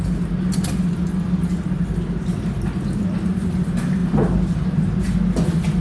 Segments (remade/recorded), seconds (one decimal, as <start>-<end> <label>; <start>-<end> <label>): 0.0-5.8 recorded